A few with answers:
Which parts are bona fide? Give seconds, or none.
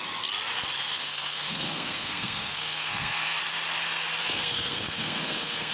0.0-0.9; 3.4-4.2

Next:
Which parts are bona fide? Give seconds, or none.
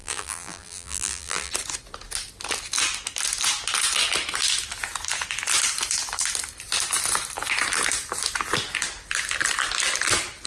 1.5-10.5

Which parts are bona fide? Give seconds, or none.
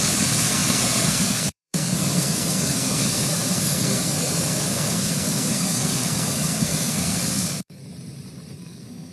7.8-8.5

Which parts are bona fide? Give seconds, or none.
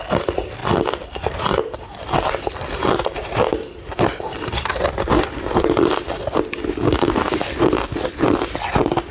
0.0-0.6; 5.7-9.1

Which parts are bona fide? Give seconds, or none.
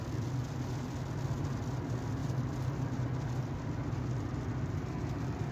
0.0-2.2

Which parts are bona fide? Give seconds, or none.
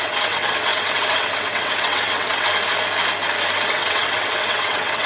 2.5-3.7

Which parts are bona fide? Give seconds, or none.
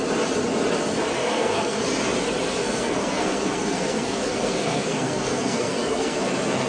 0.0-1.2; 1.8-2.6